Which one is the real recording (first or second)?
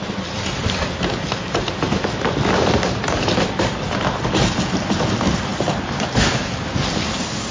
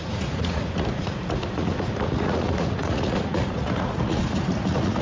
first